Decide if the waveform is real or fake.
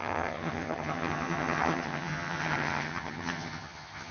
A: fake